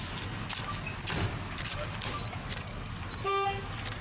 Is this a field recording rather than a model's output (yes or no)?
yes